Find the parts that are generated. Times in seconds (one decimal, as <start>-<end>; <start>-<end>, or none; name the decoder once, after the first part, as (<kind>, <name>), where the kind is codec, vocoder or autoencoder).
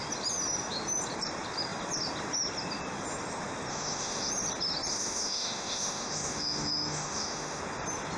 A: 3.7-4.3 (autoencoder, DAC-VAE); 4.9-7.6